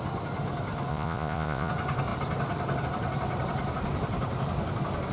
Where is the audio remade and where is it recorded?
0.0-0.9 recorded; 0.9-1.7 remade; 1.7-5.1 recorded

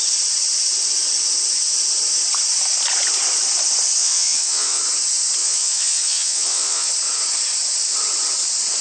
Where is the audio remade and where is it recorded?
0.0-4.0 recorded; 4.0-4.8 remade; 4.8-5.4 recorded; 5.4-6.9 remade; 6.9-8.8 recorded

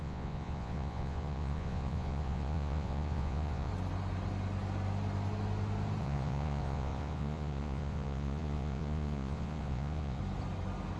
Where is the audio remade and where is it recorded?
0.0-3.7 remade; 3.7-6.0 recorded; 6.0-10.2 remade; 10.2-11.0 recorded